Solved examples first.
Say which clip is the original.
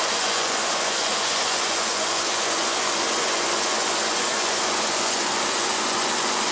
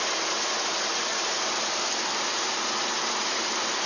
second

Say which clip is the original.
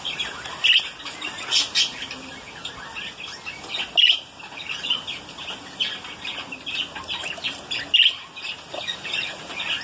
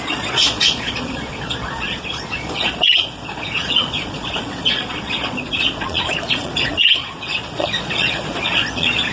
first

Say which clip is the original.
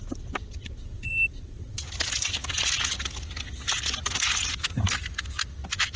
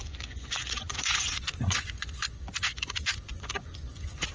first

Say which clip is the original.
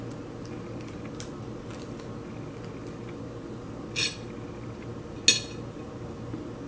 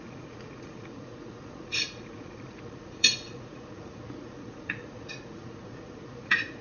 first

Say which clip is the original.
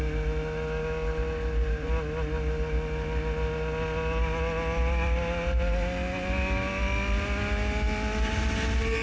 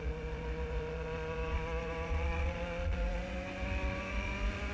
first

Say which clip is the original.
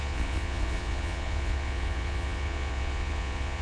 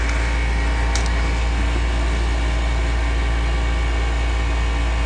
second